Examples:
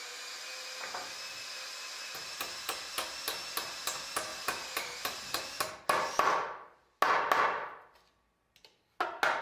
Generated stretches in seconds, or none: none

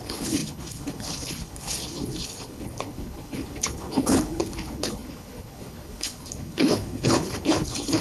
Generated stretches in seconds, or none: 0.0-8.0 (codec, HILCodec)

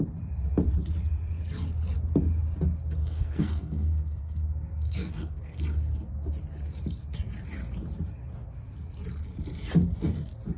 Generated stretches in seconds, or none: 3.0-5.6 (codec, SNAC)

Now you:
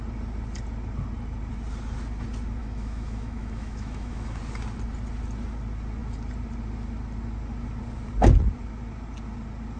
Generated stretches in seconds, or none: 2.6-4.4 (autoencoder, DAC-VAE)